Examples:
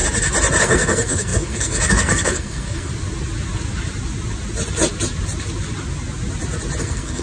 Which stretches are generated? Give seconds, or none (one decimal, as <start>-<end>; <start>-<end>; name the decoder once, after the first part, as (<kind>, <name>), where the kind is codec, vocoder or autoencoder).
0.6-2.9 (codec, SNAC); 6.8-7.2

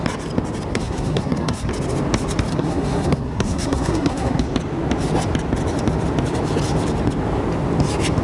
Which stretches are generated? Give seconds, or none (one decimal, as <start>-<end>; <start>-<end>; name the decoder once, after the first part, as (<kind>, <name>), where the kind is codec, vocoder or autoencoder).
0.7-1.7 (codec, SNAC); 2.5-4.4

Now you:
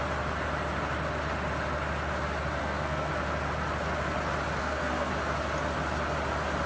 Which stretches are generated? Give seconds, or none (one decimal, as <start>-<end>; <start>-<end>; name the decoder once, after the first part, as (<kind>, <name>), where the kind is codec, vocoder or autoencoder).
2.6-3.1 (codec, SNAC); 4.6-5.1

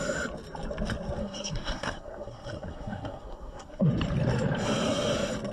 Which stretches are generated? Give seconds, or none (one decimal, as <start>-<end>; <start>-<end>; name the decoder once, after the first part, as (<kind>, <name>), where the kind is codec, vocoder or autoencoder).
1.2-3.9 (codec, SNAC)

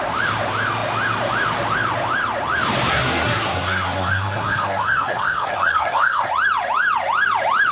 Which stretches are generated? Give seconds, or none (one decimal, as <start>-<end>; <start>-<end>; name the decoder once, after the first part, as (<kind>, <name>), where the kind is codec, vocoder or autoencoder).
2.9-6.3 (codec, SNAC)

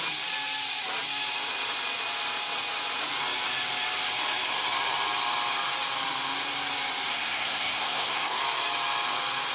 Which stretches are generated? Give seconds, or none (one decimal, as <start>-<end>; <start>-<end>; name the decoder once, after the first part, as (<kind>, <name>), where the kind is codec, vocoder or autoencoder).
7.1-8.4 (codec, SNAC)